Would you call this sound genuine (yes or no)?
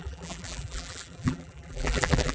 no